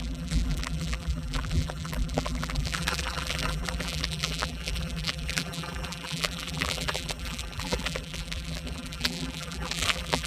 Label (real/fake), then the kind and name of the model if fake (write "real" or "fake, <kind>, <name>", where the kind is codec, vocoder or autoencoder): fake, vocoder, BigVGAN v2